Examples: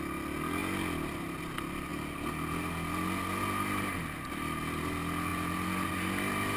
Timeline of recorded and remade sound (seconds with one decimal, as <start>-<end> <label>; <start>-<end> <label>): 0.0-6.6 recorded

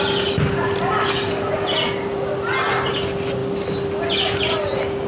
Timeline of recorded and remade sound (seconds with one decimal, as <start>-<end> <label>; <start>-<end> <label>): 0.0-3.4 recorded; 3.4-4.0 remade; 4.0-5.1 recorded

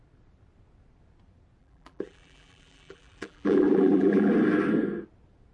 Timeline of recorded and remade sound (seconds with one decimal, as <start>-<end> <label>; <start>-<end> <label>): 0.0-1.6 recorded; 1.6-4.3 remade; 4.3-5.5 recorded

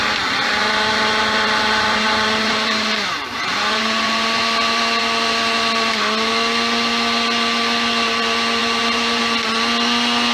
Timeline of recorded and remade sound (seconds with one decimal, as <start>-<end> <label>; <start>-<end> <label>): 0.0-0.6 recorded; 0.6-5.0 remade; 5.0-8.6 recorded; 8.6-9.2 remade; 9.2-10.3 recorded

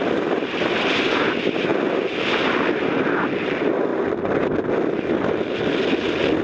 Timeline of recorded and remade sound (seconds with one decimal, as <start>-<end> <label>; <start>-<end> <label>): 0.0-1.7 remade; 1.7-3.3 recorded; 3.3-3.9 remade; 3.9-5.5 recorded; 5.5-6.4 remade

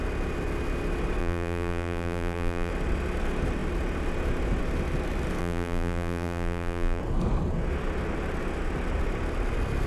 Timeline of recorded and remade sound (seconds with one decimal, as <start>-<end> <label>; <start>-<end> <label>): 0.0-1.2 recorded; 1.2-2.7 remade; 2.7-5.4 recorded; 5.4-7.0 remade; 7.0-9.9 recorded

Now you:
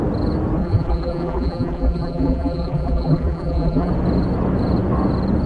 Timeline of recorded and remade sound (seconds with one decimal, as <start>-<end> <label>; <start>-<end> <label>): 0.0-0.6 recorded; 0.6-3.9 remade; 3.9-5.5 recorded